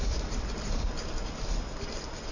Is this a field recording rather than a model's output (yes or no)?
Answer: yes